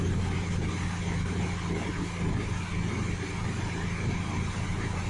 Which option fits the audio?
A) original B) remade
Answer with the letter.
A